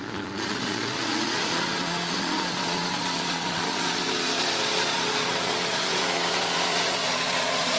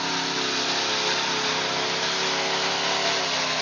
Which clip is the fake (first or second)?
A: first